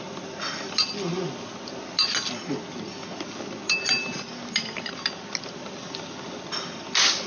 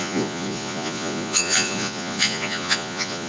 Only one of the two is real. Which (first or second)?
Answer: first